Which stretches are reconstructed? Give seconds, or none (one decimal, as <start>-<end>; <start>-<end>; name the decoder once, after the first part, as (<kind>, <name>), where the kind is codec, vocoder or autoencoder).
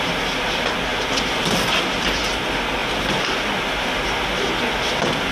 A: none